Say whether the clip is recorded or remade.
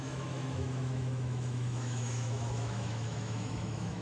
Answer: remade